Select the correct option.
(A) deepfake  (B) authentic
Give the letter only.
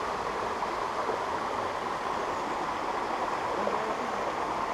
B